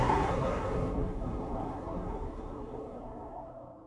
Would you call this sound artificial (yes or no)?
yes